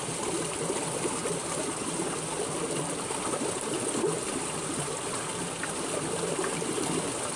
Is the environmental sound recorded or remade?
recorded